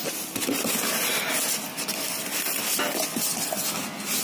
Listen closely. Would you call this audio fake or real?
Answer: real